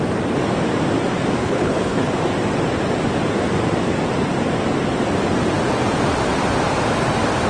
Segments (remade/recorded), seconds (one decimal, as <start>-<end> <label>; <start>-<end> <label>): 0.0-1.4 recorded; 1.4-2.1 remade; 2.1-7.5 recorded